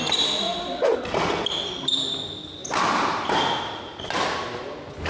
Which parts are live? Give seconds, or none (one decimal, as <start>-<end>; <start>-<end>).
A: 0.0-5.1